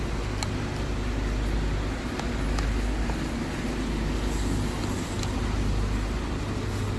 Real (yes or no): yes